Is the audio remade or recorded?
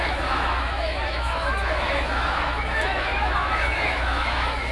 remade